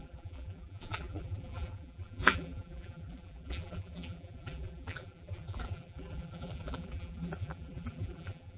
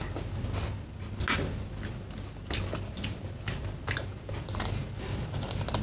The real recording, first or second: second